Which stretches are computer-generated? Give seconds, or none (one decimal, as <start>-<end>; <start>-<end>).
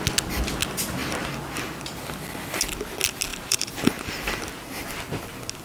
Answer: 3.3-4.1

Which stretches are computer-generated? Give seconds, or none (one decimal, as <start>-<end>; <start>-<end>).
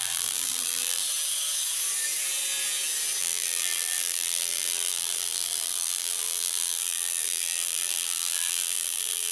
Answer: 0.0-1.0; 3.2-9.3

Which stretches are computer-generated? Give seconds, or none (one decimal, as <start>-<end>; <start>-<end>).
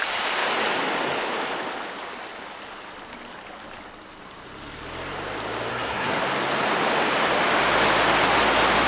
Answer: 5.7-6.2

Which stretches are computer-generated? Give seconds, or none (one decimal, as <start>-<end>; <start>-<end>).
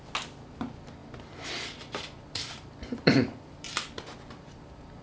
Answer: 1.0-4.0